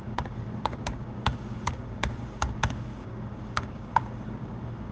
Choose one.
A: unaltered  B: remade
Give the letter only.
B